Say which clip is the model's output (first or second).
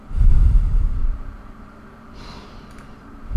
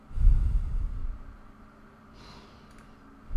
first